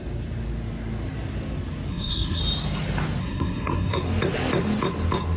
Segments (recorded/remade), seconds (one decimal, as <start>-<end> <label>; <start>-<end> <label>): 0.0-1.9 recorded; 1.9-2.4 remade; 2.4-3.2 recorded; 3.2-4.0 remade; 4.0-5.4 recorded